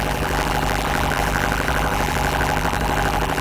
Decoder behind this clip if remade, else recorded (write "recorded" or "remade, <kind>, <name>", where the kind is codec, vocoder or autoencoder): remade, vocoder, BigVGAN v2